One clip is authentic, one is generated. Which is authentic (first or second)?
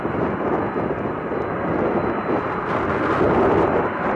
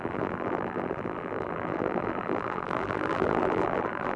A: first